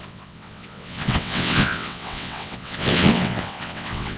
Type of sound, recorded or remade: remade